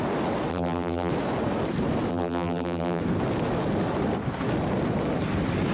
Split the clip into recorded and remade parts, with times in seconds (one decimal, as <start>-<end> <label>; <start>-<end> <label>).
0.0-0.5 recorded; 0.5-1.1 remade; 1.1-2.1 recorded; 2.1-3.0 remade; 3.0-5.7 recorded